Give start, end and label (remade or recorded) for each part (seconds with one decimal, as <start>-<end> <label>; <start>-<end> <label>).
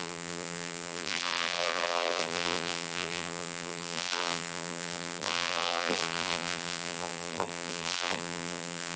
0.0-9.0 remade